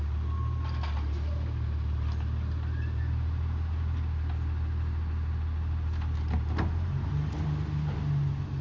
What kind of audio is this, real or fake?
real